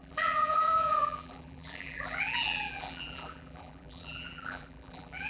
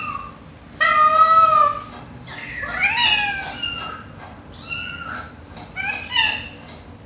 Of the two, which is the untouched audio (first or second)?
second